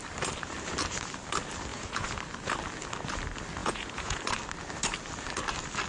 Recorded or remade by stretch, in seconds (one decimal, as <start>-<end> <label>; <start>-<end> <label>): 0.0-1.7 recorded; 1.7-2.2 remade; 2.2-3.6 recorded; 3.6-4.2 remade; 4.2-5.9 recorded